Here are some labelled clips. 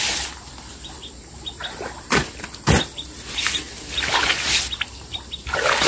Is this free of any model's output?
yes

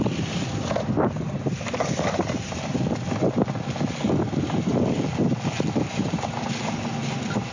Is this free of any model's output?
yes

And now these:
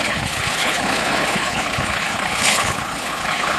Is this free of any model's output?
no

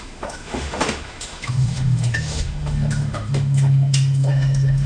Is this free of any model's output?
no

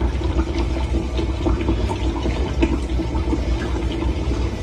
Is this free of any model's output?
yes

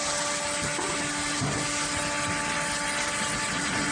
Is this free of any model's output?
yes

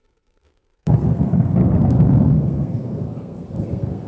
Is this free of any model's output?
no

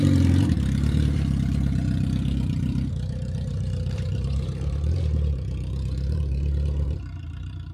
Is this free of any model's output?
no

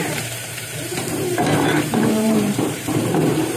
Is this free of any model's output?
no